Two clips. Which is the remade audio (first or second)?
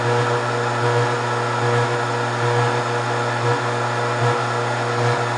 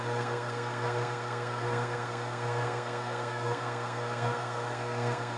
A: second